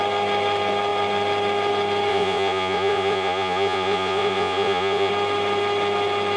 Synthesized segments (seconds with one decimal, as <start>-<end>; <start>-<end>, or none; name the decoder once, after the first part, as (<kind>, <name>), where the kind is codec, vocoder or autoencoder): 2.1-5.1 (vocoder, Vocos)